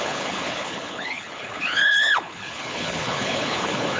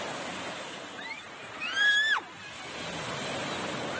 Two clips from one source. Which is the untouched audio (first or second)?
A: second